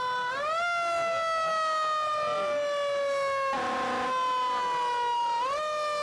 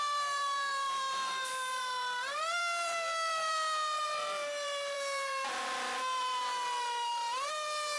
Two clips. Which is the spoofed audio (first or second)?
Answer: second